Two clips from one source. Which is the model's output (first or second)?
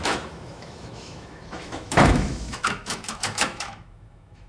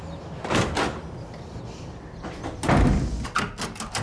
first